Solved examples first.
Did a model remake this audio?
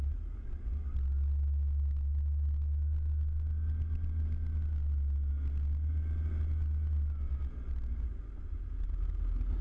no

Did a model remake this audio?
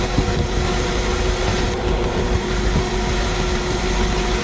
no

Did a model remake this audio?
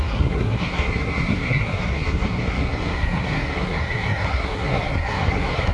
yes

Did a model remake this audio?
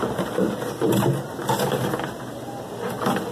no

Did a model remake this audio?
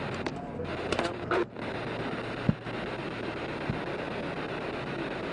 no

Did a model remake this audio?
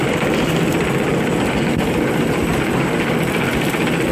no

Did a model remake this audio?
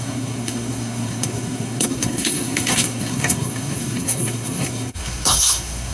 yes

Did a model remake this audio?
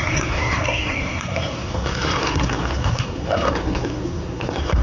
yes